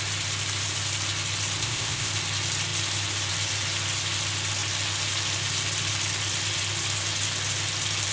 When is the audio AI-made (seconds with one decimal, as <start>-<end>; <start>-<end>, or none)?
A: 1.6-2.1